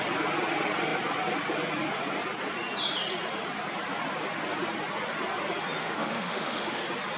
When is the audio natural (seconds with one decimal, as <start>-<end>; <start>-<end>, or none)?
0.0-5.8; 6.8-7.2